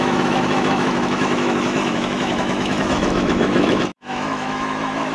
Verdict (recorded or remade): remade